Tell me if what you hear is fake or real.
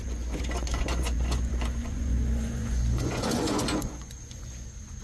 fake